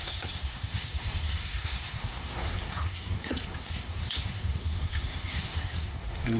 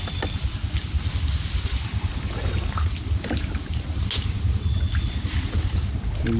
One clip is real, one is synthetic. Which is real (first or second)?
second